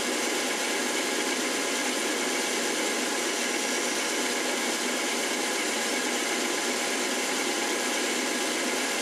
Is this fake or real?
real